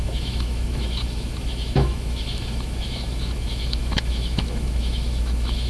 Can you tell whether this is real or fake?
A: fake